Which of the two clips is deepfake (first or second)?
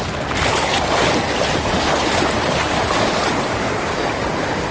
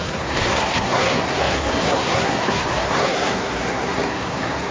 second